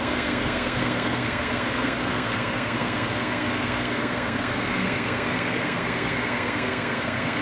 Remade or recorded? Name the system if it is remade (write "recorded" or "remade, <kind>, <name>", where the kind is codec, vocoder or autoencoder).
remade, codec, SNAC